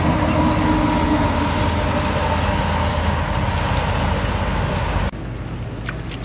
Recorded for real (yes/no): yes